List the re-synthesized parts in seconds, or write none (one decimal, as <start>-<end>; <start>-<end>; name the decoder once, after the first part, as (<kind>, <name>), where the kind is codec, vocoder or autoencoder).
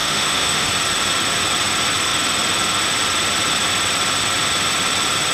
0.0-0.7 (autoencoder, DAC-VAE)